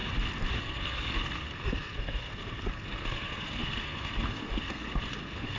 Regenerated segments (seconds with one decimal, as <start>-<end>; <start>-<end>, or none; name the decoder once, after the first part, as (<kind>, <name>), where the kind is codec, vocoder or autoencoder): 0.6-5.6 (codec, SNAC)

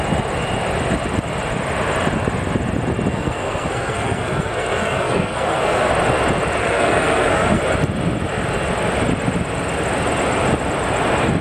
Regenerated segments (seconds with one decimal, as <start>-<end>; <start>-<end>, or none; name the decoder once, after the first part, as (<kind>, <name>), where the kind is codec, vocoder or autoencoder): 3.1-5.9 (codec, SNAC); 6.6-7.6

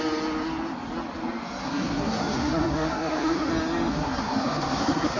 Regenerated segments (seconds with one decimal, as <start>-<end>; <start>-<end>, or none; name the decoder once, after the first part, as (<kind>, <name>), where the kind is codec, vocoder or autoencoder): 1.6-3.5 (codec, SNAC); 3.9-5.2

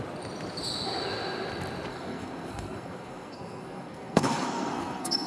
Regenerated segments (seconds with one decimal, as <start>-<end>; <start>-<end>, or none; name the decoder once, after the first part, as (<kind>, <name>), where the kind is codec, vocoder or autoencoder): 1.9-5.3 (codec, SNAC)

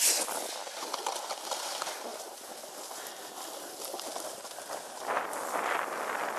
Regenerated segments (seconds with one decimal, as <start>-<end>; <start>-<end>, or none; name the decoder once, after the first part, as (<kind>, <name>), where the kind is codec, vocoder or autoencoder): none